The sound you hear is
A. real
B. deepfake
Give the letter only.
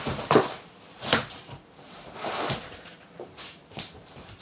B